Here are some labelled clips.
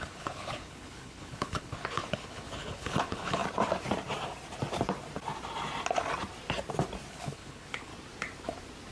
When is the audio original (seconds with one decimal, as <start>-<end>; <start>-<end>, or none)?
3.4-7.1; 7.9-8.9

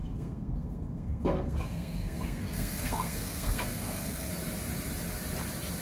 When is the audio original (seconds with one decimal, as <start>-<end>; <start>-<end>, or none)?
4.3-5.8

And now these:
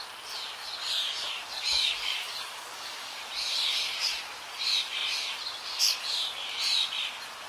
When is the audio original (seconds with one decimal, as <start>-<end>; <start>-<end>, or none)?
0.0-0.8; 3.2-7.5

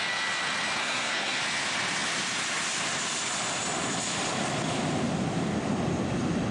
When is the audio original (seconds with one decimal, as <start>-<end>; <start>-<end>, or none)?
0.0-0.8; 1.4-6.5